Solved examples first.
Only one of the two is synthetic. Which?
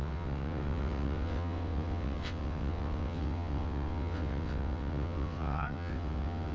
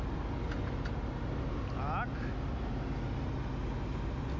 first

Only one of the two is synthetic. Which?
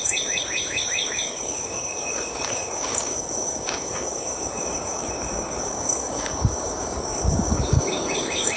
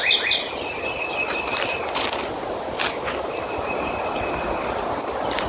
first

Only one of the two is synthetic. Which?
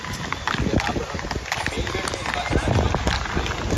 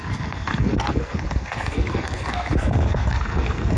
second